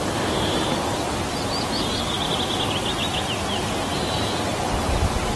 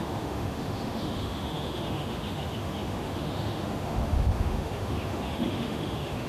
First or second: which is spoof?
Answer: second